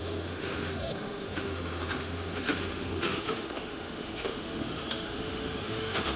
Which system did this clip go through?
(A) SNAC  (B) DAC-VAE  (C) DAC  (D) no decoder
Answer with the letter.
B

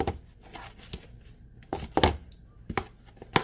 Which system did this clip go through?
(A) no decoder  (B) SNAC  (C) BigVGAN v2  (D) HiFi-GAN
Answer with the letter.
A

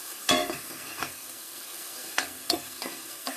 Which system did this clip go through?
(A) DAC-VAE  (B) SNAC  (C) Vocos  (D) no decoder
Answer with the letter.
B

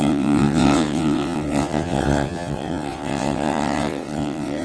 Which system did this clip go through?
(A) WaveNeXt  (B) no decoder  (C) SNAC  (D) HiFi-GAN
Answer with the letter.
A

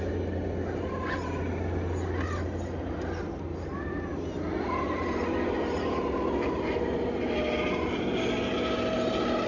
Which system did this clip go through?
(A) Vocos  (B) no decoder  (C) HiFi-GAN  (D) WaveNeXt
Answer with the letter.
B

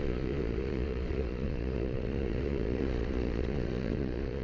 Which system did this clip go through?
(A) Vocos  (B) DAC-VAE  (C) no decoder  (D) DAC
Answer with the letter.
A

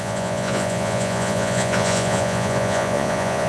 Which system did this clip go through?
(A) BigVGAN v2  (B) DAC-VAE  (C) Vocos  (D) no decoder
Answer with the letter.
C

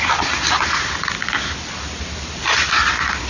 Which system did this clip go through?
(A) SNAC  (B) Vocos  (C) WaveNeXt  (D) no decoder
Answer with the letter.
D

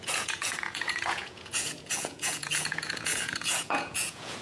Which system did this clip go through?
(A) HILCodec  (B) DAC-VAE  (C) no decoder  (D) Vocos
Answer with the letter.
D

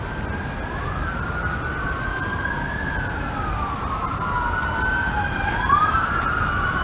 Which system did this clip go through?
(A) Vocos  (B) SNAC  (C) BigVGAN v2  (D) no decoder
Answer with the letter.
D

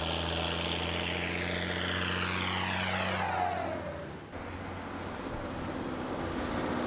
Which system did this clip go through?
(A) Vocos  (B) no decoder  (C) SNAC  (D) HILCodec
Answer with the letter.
B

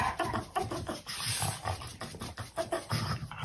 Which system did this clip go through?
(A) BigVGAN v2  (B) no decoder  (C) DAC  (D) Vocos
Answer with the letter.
B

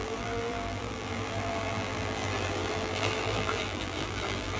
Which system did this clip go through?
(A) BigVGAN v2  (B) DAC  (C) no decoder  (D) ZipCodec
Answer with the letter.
A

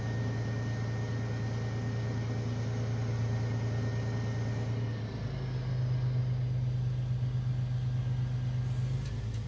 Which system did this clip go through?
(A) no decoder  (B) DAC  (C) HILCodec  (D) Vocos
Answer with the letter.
A